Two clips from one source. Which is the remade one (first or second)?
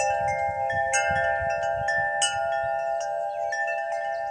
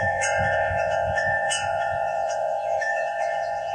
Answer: second